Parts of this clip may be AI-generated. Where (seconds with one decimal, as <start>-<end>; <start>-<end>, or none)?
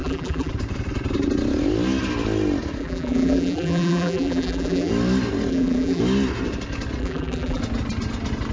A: 0.0-0.5; 2.8-4.9; 5.5-6.0; 7.0-7.6